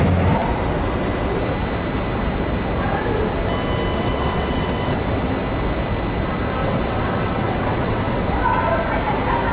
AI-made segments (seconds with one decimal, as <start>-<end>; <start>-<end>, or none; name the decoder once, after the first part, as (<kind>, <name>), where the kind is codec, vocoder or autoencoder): 3.9-5.3 (vocoder, WaveNeXt); 6.6-8.3